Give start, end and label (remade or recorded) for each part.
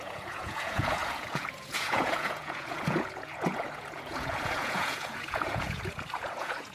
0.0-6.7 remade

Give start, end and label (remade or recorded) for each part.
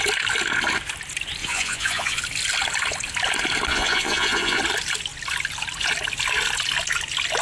0.0-1.4 recorded; 1.4-2.2 remade; 2.2-3.7 recorded; 3.7-4.6 remade; 4.6-7.4 recorded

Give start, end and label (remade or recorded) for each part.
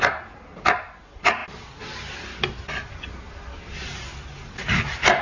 0.0-5.2 recorded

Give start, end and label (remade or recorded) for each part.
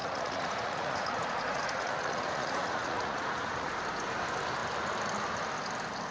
0.0-3.7 remade; 3.7-6.1 recorded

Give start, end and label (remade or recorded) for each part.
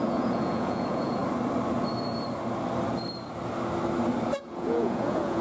0.0-1.2 remade; 1.2-4.4 recorded; 4.4-5.4 remade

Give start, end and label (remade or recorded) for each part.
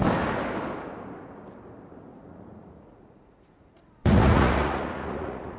0.0-2.1 recorded; 2.1-5.6 remade